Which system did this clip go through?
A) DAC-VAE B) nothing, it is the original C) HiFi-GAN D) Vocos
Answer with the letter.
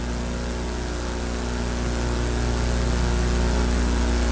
B